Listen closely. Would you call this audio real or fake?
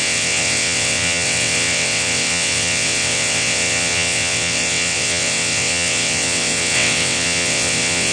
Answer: fake